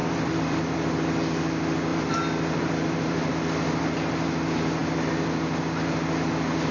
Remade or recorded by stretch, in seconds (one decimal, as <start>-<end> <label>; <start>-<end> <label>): 0.0-0.6 remade; 0.6-1.9 recorded; 1.9-3.3 remade; 3.3-6.7 recorded